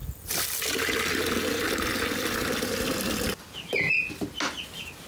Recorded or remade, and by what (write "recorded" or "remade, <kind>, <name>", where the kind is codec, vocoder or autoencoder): recorded